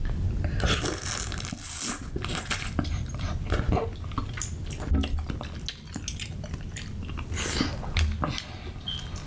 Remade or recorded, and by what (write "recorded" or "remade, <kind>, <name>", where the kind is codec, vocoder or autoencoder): recorded